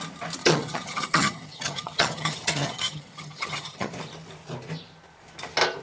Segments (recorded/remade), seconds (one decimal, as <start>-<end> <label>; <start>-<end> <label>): 0.0-0.4 recorded; 0.4-3.9 remade; 3.9-5.8 recorded